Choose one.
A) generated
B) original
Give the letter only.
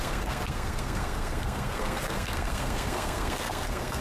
A